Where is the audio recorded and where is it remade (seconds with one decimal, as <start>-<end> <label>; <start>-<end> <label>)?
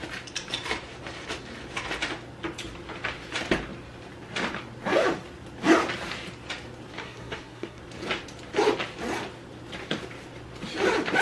0.0-7.0 recorded; 7.0-7.8 remade; 7.8-11.2 recorded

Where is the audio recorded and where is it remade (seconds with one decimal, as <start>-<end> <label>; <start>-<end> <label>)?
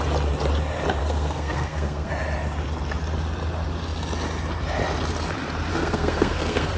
0.0-1.0 recorded; 1.0-2.1 remade; 2.1-5.7 recorded; 5.7-6.8 remade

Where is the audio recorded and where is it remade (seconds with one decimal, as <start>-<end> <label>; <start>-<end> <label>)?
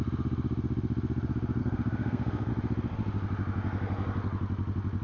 0.0-1.6 recorded; 1.6-2.5 remade; 2.5-5.0 recorded